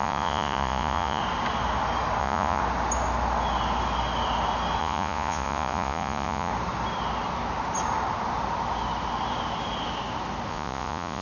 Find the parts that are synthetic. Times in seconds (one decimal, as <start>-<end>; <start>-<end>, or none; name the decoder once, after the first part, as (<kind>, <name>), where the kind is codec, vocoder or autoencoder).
0.0-1.2 (vocoder, Vocos); 2.2-2.6; 4.8-6.5; 10.5-11.2